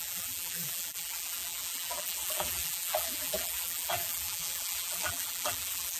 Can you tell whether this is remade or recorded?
remade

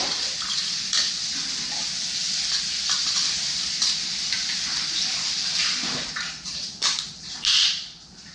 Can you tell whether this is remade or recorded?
remade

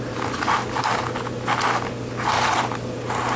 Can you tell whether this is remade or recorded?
recorded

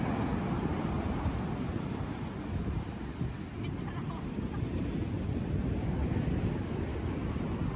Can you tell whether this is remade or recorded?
recorded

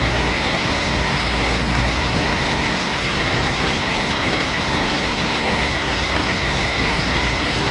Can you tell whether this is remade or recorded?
remade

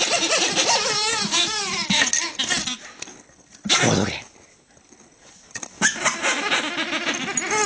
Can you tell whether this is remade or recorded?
recorded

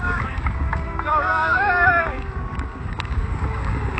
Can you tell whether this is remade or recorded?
remade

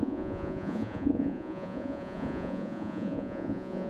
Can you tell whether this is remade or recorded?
remade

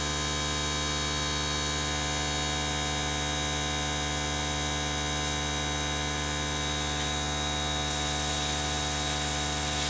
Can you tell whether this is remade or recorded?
recorded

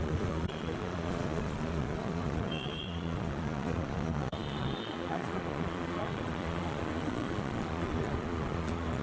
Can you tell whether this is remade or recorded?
remade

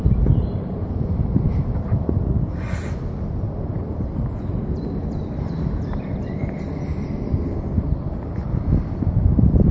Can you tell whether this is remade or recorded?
recorded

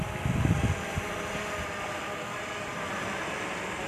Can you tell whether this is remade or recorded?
recorded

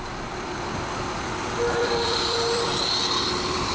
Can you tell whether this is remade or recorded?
remade